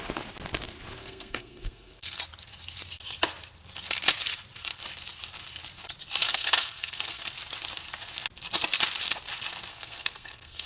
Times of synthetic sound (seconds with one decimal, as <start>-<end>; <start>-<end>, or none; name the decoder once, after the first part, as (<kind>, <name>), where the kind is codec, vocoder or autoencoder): 1.0-2.2 (codec, SNAC); 6.2-7.2; 9.7-10.7